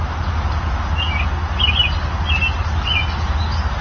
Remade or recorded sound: recorded